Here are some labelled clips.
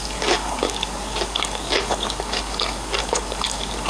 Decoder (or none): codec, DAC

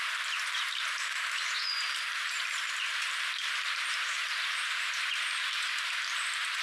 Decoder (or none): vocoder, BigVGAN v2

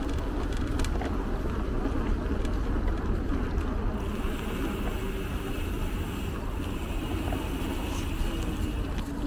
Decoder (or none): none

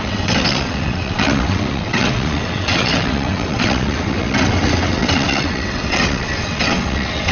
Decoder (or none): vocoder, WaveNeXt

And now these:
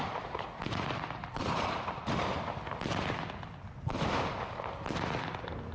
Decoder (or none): none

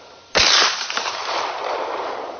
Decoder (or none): vocoder, BigVGAN v2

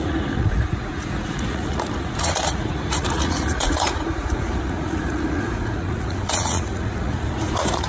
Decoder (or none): vocoder, Vocos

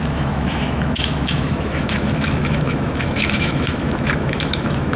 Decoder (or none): autoencoder, DAC-VAE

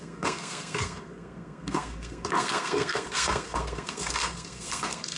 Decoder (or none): codec, SNAC